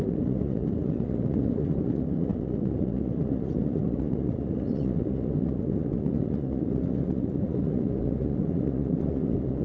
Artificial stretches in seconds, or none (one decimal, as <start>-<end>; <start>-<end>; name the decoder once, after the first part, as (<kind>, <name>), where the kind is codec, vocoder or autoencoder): 0.0-9.6 (vocoder, Vocos)